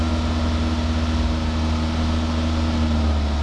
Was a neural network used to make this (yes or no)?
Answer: no